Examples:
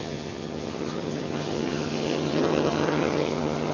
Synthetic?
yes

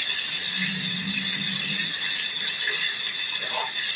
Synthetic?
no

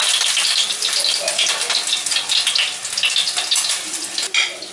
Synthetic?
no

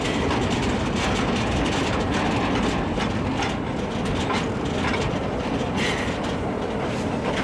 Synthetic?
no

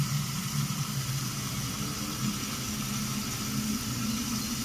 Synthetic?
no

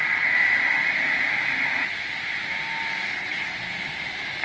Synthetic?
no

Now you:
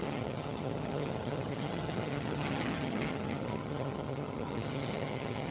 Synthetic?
yes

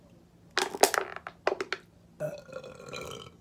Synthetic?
no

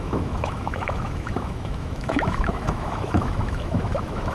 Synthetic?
yes